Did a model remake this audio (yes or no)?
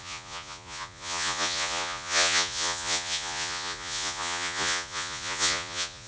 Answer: yes